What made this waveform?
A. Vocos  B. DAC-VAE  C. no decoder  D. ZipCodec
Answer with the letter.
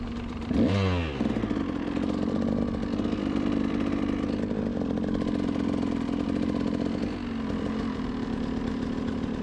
C